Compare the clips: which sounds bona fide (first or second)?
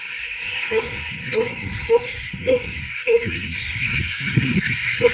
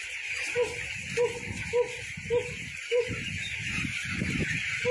second